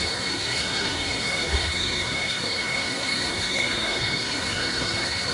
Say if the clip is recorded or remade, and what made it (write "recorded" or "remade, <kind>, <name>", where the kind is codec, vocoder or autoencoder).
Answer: remade, codec, SNAC